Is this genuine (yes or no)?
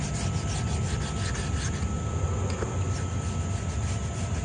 yes